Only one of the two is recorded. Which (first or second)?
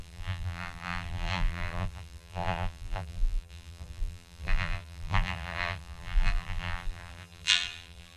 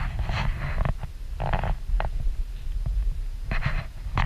second